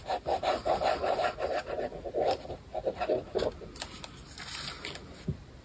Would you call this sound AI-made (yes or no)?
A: no